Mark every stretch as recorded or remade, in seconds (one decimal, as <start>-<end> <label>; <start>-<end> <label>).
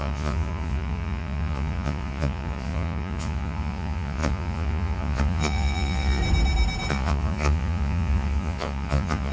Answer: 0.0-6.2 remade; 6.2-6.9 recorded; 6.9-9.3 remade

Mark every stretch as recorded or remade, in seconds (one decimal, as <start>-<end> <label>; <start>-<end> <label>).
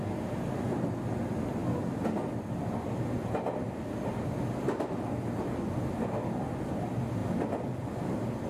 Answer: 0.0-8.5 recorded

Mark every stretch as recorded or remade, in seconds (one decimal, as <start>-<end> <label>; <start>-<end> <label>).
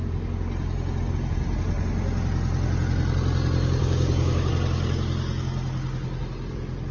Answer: 0.0-3.8 recorded; 3.8-4.5 remade; 4.5-6.9 recorded